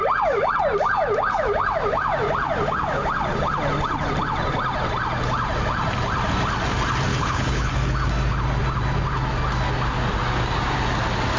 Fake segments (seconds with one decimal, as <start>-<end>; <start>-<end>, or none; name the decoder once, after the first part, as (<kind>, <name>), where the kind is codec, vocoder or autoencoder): 7.1-7.7 (codec, HILCodec)